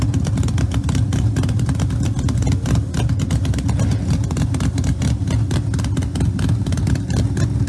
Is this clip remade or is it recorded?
recorded